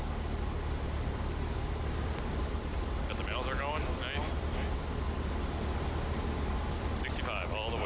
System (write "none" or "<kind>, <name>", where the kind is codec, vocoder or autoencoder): none